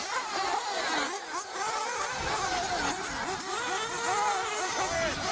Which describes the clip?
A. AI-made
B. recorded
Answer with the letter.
B